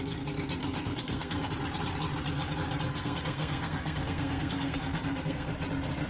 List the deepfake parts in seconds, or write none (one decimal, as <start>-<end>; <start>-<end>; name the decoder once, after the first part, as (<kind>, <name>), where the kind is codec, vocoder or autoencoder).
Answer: 0.6-1.5 (codec, SNAC); 2.9-5.5